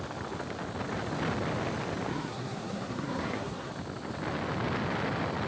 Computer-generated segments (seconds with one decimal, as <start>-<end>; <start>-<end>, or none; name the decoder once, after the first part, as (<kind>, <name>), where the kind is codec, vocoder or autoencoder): 2.1-3.7 (codec, SNAC)